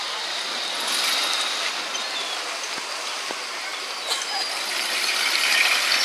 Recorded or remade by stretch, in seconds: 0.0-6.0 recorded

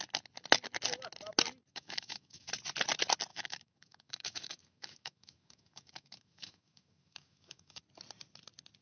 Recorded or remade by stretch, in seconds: 0.0-1.7 recorded; 1.7-2.5 remade; 2.5-3.3 recorded; 3.3-7.8 remade; 7.8-8.8 recorded

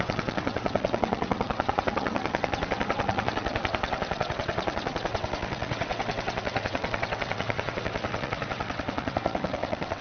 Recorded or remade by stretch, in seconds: 0.0-10.0 remade

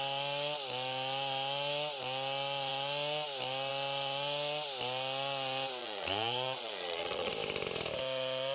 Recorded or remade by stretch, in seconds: 0.0-5.8 recorded; 5.8-7.3 remade; 7.3-8.5 recorded

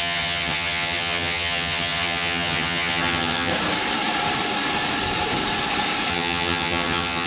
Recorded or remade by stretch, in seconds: 0.0-3.5 remade; 3.5-6.1 recorded; 6.1-7.3 remade

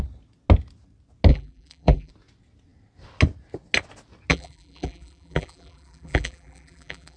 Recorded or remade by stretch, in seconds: 0.0-1.3 recorded; 1.3-2.1 remade; 2.1-4.3 recorded; 4.3-7.2 remade

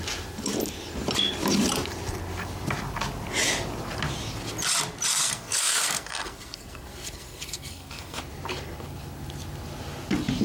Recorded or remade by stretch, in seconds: 0.0-5.1 recorded; 5.1-8.2 remade; 8.2-10.4 recorded

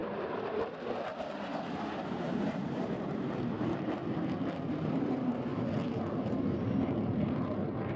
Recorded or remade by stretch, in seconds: 0.0-2.0 recorded; 2.0-4.0 remade; 4.0-4.7 recorded; 4.7-5.5 remade; 5.5-6.2 recorded; 6.2-8.0 remade